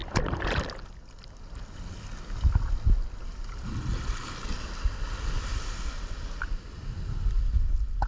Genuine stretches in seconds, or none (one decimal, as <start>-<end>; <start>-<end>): 0.0-8.1